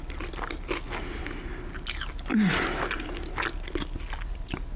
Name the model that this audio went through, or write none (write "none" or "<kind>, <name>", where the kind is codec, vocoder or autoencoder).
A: none